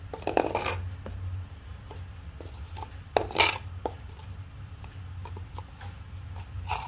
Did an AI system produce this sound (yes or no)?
no